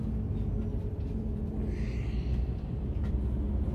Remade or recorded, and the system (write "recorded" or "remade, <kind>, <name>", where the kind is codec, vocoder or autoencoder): recorded